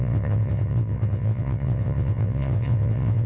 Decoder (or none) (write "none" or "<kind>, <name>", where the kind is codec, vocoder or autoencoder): vocoder, WaveNeXt